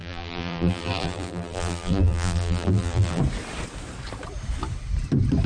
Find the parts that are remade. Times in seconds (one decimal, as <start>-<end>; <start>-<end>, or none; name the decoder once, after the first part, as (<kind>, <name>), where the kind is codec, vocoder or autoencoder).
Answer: 0.0-3.2 (vocoder, BigVGAN v2)